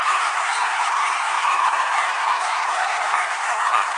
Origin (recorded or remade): remade